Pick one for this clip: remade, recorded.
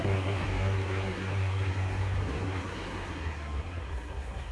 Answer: remade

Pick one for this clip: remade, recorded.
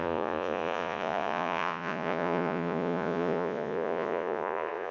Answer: remade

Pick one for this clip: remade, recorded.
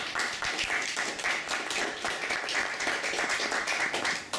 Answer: recorded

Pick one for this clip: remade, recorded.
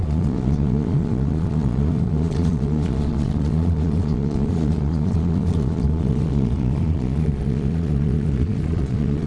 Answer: remade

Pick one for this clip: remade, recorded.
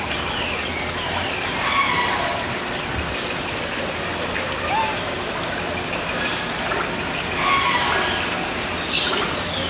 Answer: recorded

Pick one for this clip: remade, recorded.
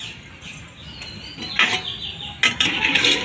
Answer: recorded